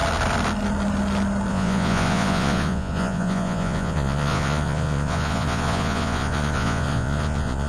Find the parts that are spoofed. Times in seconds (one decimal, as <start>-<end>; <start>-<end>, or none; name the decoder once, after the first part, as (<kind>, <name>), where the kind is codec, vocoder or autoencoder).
1.5-7.7 (vocoder, Vocos)